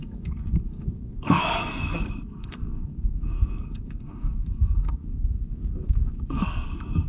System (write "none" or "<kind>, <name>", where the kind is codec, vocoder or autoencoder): codec, SNAC